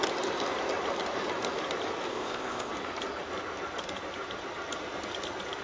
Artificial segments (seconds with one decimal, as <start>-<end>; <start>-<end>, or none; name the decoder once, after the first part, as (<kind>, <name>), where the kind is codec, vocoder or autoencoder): 2.1-2.7 (codec, ZipCodec)